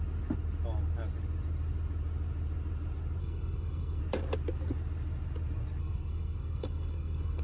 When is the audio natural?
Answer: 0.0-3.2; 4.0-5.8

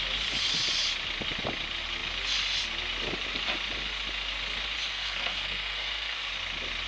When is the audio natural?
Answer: 0.0-4.9; 6.3-6.9

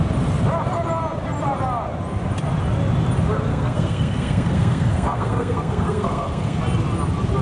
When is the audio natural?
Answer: 0.0-3.5; 6.6-7.4

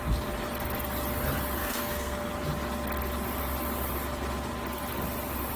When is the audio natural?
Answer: 0.0-1.6; 2.3-5.6

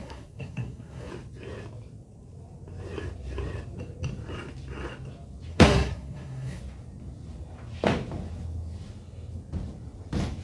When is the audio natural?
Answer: 1.1-5.5; 6.6-10.4